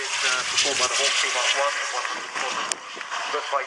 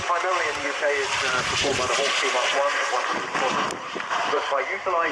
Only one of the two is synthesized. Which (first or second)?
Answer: second